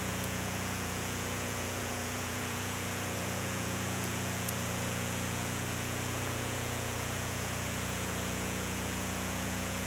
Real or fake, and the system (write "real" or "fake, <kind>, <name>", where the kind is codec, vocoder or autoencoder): fake, vocoder, Vocos